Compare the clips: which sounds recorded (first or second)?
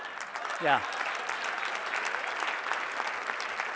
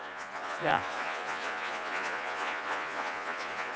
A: first